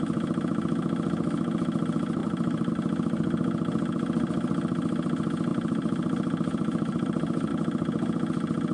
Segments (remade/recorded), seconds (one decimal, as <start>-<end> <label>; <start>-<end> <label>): 0.0-2.2 recorded; 2.2-2.7 remade; 2.7-5.5 recorded; 5.5-7.5 remade; 7.5-8.7 recorded